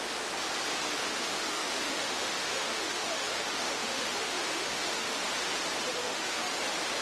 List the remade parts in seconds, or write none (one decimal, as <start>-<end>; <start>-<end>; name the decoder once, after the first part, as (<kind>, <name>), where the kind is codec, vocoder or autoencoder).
1.0-5.2 (autoencoder, DAC-VAE); 6.0-6.6